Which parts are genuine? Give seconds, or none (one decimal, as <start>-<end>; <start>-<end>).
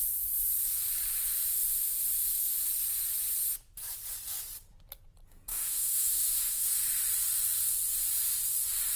0.0-1.2; 2.6-5.5; 6.8-9.0